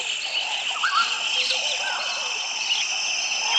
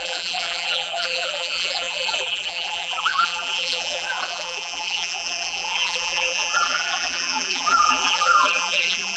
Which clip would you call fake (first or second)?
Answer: second